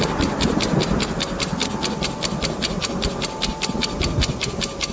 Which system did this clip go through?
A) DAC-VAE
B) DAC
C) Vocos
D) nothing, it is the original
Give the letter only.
D